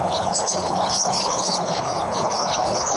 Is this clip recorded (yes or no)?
no